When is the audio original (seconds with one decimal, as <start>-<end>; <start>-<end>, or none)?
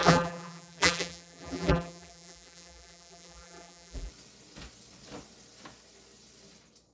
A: 4.1-6.9